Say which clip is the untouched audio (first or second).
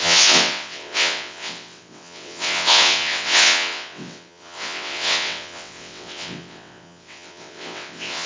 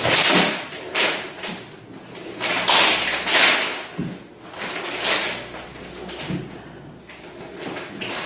second